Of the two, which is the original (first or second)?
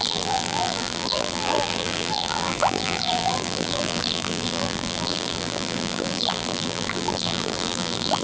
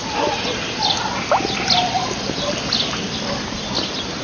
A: second